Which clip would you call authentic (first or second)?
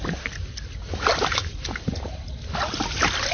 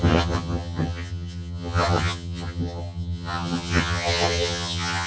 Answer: first